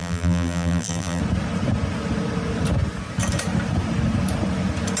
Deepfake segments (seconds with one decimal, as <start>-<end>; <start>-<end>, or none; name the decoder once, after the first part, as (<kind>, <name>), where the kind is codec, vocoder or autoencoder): 0.0-1.2 (vocoder, BigVGAN v2)